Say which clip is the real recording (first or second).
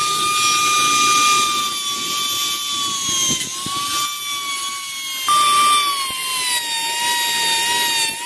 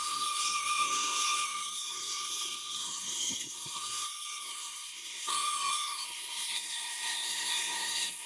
first